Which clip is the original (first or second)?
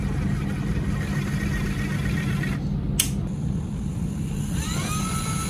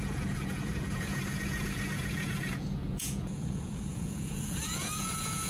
first